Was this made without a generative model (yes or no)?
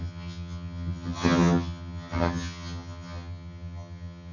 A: no